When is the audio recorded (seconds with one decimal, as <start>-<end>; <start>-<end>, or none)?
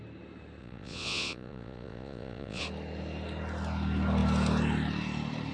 0.0-0.6; 2.6-5.5